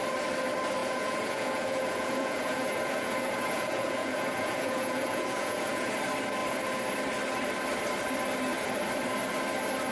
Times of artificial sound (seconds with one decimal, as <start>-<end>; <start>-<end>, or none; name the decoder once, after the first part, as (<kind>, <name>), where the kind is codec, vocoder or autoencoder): 0.8-5.9 (vocoder, Vocos)